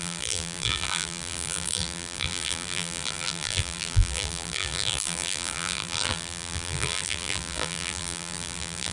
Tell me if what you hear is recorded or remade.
remade